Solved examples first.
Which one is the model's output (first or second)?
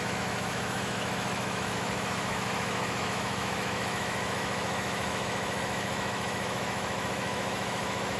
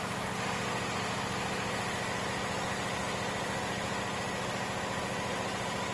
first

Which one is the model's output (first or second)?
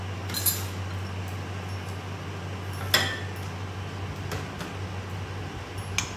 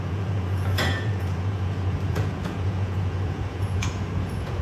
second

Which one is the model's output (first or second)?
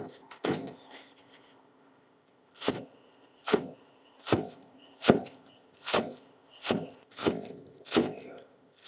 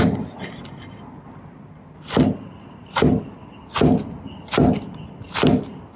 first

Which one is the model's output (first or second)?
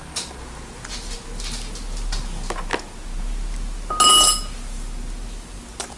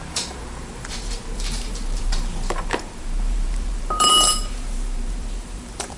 second